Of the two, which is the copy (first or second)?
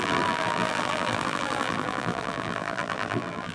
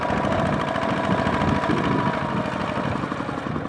first